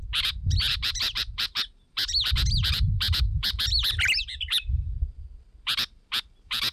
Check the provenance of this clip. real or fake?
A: fake